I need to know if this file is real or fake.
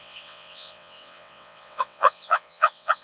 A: fake